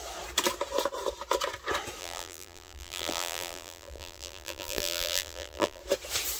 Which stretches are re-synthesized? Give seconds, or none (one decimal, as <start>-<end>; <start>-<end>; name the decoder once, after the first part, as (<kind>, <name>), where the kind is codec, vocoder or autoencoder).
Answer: 2.0-5.8 (vocoder, BigVGAN v2)